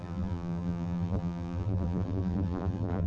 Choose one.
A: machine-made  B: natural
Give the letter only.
A